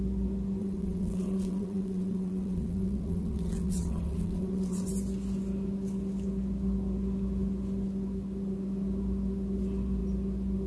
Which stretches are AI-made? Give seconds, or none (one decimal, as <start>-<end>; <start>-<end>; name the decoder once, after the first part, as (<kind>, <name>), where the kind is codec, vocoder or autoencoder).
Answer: 0.6-4.9 (vocoder, WaveNeXt)